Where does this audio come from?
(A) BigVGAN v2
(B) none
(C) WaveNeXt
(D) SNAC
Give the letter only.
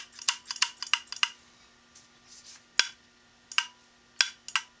B